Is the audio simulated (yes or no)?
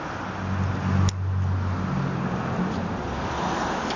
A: no